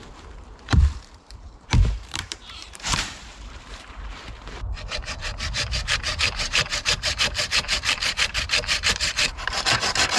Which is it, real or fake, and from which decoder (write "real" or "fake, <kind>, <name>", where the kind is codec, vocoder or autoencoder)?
fake, vocoder, BigVGAN v2